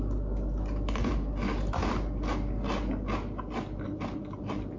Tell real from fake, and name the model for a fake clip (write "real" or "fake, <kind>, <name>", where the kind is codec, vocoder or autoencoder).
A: real